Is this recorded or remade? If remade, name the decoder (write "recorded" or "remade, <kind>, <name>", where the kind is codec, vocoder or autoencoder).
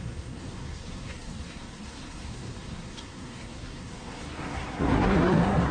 remade, codec, SNAC